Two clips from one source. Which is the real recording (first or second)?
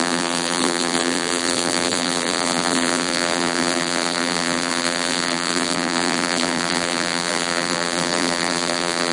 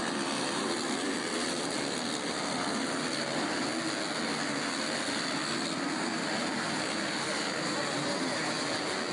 second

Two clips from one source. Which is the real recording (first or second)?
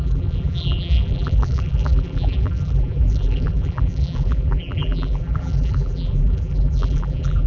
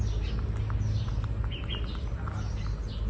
second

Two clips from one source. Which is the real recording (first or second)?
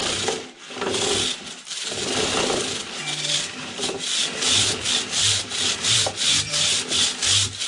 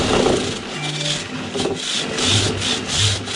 second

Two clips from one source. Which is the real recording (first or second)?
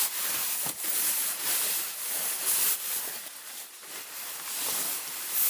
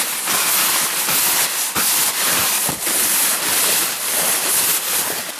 second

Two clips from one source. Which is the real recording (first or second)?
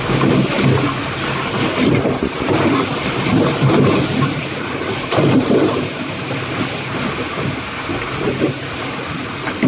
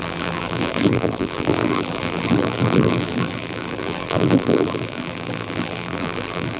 first